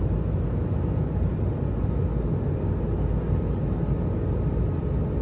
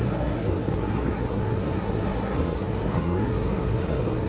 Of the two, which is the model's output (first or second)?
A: second